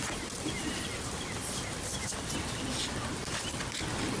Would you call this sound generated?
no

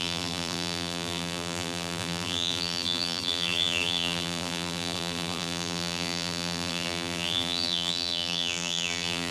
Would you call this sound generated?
yes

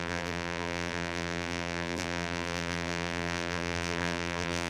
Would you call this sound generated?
yes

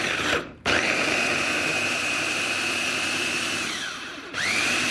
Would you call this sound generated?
yes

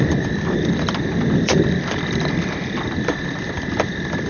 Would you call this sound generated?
yes